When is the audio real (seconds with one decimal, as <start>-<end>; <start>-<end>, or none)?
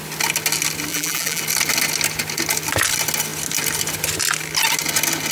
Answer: 0.0-0.9; 1.4-5.3